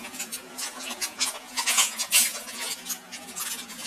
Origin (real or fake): fake